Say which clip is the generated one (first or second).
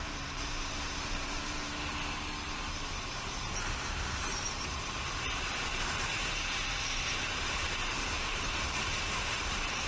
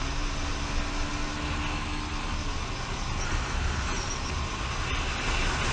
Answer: first